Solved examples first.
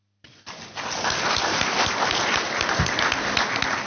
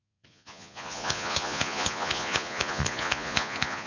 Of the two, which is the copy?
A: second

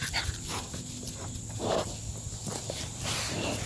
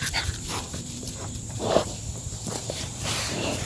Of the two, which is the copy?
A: second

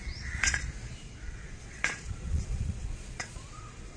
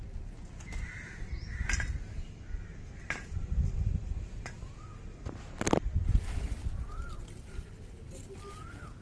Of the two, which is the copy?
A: first